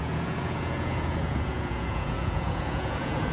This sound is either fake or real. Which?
fake